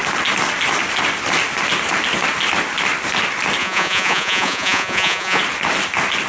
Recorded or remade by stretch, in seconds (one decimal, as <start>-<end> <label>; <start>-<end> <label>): 0.0-3.6 recorded; 3.6-5.4 remade; 5.4-6.3 recorded